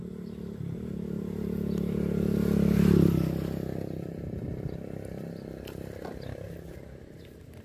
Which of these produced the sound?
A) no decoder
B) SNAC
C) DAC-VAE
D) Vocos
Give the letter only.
A